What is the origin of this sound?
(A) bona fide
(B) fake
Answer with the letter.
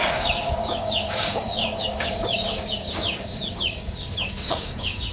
B